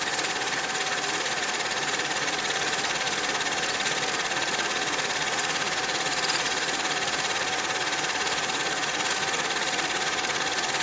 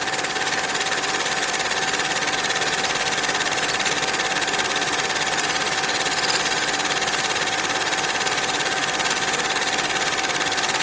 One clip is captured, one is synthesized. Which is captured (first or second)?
second